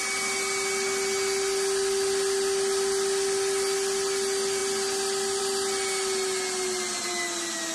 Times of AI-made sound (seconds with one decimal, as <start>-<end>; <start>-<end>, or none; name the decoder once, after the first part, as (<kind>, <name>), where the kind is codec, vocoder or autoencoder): none